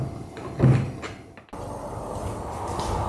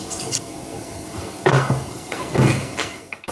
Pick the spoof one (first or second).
second